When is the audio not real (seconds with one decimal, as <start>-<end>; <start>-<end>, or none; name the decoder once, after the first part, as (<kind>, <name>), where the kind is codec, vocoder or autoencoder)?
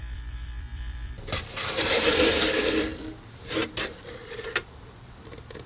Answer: none